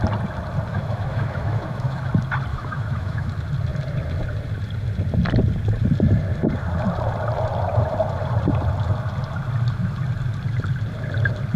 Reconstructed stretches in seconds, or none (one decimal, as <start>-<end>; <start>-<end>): 0.7-2.1; 2.5-3.3